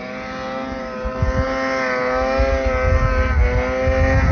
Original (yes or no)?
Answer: yes